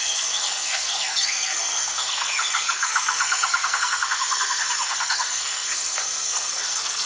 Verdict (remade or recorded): remade